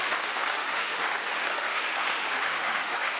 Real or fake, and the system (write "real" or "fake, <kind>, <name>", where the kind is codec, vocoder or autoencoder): fake, autoencoder, DAC-VAE